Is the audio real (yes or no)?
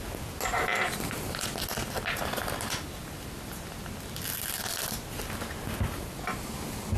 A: yes